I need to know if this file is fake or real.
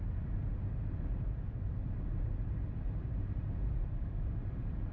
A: fake